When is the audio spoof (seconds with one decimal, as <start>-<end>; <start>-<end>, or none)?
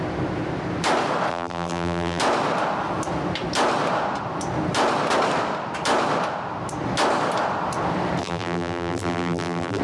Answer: 1.3-2.2; 8.2-9.8